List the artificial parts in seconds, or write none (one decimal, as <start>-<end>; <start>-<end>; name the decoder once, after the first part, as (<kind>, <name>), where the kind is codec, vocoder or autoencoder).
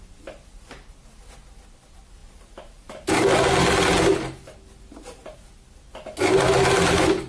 none